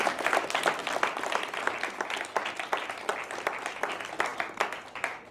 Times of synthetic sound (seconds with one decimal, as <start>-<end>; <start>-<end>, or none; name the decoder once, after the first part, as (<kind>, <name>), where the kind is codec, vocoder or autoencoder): none